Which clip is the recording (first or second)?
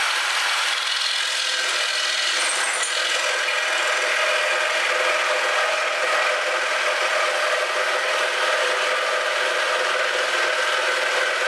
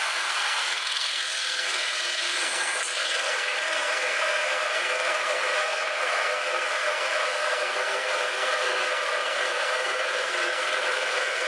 first